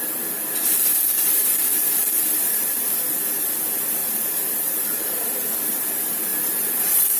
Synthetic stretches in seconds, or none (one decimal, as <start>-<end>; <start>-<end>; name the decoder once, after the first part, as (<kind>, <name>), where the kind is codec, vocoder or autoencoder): 4.0-5.5 (vocoder, BigVGAN v2); 6.3-7.2